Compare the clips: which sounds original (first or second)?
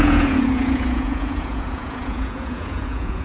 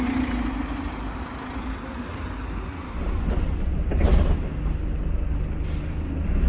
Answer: second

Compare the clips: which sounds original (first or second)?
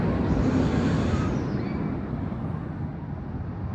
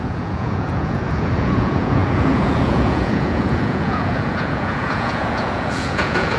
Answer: first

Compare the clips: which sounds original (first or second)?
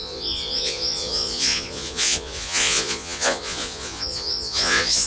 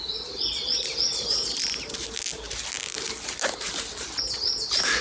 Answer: second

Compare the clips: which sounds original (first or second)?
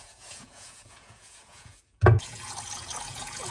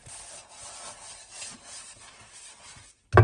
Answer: second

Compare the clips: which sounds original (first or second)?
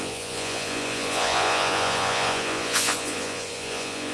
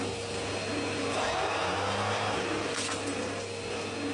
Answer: second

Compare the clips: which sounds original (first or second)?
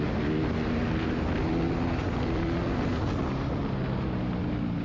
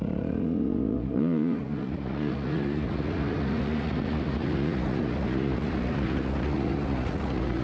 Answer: first